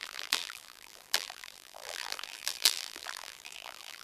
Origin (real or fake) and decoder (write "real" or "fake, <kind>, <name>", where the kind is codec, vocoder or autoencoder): fake, vocoder, BigVGAN v2